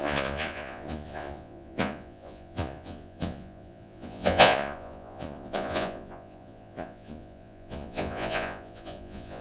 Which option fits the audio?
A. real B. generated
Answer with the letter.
B